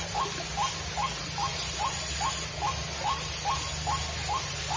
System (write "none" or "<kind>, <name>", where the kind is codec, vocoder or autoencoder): none